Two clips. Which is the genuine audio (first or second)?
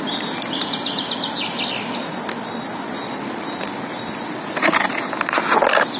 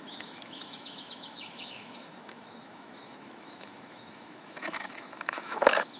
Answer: first